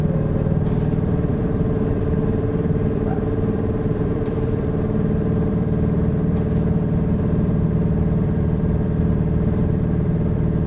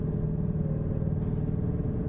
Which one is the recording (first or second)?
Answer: second